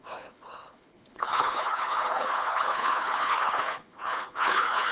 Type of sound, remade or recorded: remade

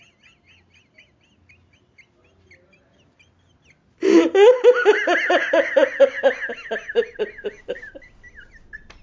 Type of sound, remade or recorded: recorded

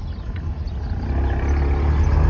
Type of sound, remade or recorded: recorded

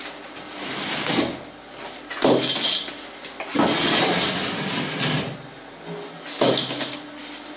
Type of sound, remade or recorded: recorded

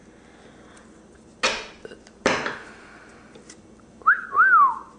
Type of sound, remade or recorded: recorded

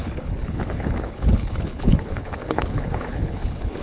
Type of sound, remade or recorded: remade